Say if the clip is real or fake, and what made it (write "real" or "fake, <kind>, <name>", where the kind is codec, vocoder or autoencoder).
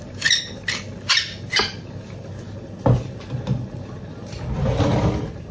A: real